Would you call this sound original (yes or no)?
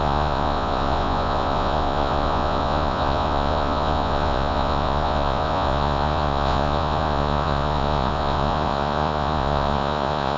no